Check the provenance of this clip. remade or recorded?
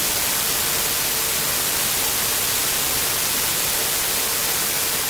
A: remade